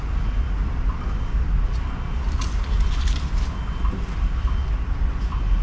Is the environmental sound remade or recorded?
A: recorded